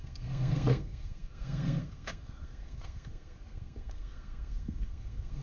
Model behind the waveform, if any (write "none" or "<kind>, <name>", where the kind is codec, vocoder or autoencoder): codec, SNAC